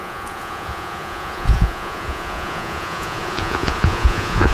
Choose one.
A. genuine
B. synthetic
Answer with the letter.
B